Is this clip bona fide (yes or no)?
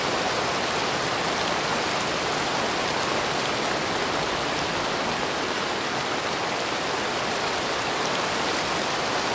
yes